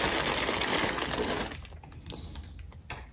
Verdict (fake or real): real